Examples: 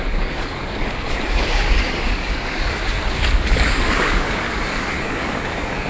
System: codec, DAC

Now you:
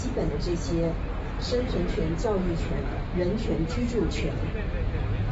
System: none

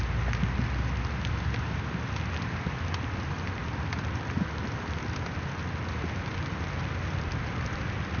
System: none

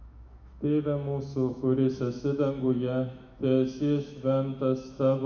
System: autoencoder, DAC-VAE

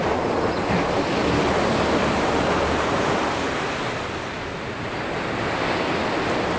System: none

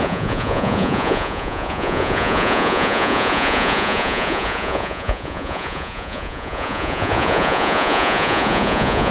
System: vocoder, Vocos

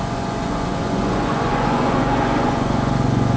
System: vocoder, Vocos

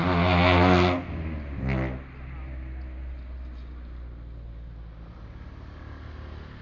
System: none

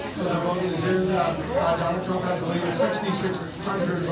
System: none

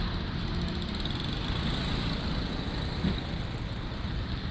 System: none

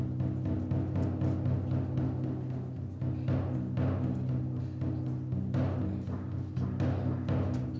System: none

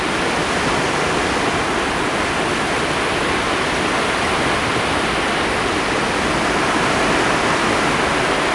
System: none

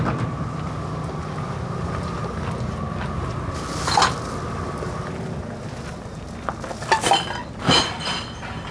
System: none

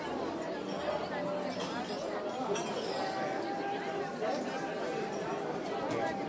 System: none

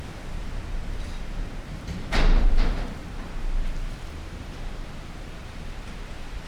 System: vocoder, BigVGAN v2